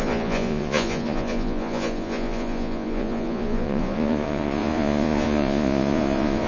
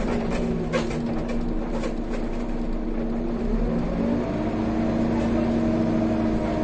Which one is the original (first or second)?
second